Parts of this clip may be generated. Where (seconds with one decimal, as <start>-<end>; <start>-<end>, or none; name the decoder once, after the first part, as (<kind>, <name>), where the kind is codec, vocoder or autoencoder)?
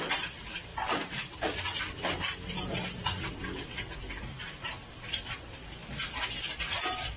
none